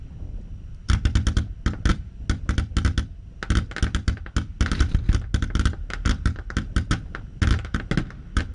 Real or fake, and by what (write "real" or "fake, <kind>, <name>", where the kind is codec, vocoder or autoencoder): real